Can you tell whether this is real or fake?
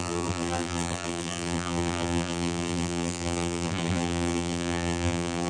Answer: fake